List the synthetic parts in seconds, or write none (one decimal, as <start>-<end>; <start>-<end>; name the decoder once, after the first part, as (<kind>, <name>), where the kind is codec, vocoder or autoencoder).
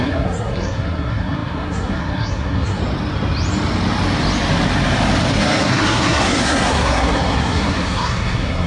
0.0-2.8 (codec, SNAC); 5.3-8.7